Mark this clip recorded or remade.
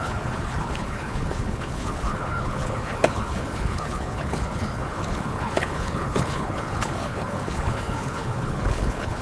remade